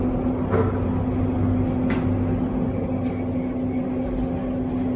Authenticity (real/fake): real